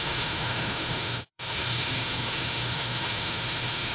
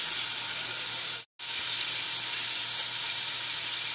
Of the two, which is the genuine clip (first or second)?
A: second